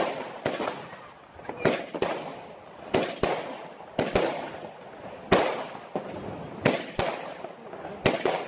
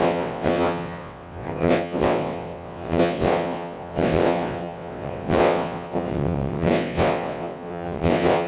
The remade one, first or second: second